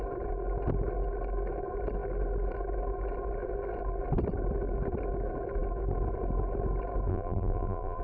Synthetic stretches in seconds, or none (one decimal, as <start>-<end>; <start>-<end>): 7.1-8.0